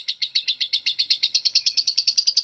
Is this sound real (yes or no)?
no